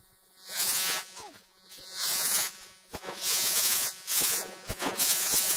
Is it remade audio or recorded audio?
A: remade